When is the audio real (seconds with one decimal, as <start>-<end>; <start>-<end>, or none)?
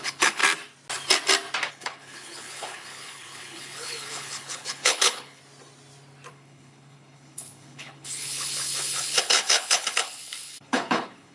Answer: 0.4-1.7; 5.4-6.3